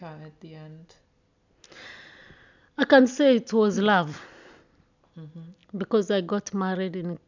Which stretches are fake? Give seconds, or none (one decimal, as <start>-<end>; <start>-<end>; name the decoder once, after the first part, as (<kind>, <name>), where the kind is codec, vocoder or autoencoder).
2.2-3.0 (vocoder, BigVGAN v2)